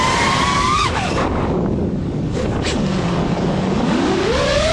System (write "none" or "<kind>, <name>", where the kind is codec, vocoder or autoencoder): codec, DAC